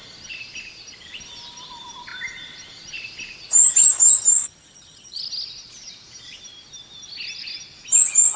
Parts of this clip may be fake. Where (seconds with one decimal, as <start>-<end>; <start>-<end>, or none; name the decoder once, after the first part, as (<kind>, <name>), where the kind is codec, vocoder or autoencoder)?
4.4-5.2 (vocoder, HiFi-GAN)